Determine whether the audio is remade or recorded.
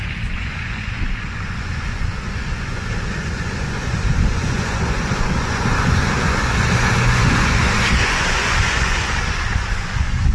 remade